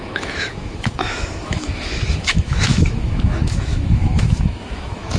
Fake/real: fake